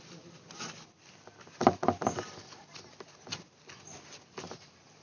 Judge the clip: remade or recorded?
recorded